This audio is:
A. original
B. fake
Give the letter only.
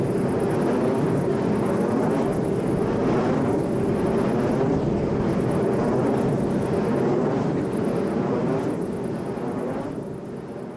A